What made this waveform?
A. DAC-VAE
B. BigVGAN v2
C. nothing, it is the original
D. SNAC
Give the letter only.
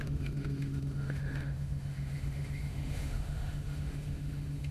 A